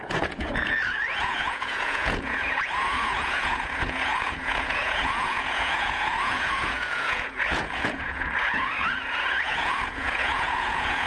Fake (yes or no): yes